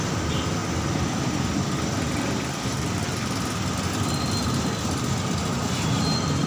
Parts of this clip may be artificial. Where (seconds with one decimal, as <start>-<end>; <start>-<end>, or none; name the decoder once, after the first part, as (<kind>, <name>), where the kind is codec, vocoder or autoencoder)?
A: 5.4-6.0 (vocoder, BigVGAN v2)